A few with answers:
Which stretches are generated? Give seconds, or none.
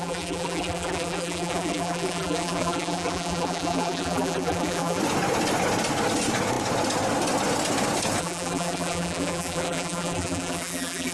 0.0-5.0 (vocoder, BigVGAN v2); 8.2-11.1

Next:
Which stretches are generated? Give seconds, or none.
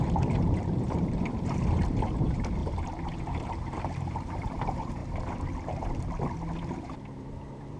0.0-2.6 (vocoder, BigVGAN v2); 3.2-5.0; 6.8-7.8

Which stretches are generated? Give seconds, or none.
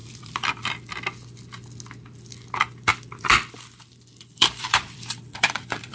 0.0-0.6 (vocoder, BigVGAN v2); 2.9-5.9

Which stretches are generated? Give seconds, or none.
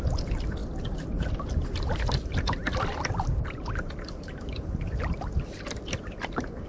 none